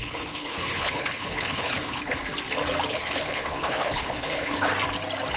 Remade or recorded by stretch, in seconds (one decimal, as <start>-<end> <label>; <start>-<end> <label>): 0.0-2.2 remade; 2.2-2.9 recorded; 2.9-4.7 remade; 4.7-5.4 recorded